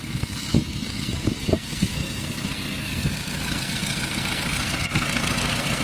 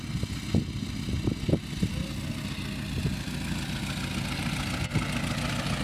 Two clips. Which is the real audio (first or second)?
second